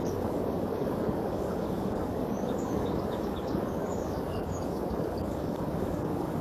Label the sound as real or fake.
fake